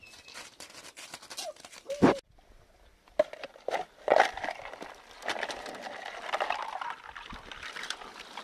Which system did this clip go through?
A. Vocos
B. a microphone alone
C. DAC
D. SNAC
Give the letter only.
B